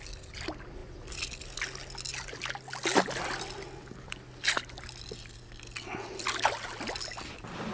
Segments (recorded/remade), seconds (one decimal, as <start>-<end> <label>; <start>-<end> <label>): 0.0-7.7 recorded